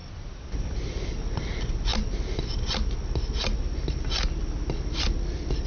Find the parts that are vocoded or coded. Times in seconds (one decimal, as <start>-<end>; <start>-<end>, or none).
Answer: none